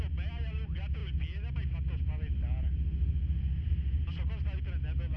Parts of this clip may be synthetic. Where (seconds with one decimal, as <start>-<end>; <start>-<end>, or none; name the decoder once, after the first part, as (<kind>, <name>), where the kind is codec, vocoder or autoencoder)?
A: none